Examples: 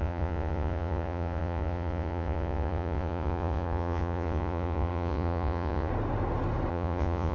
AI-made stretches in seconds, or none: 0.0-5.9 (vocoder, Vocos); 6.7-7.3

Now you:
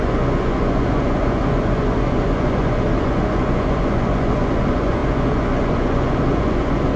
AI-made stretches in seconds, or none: 0.0-7.0 (vocoder, Vocos)

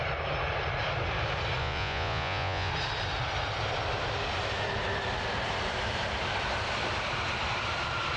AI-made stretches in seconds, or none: 1.6-2.7 (vocoder, Vocos)

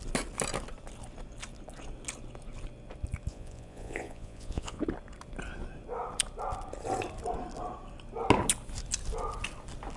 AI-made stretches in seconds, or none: 3.3-4.8 (vocoder, Vocos)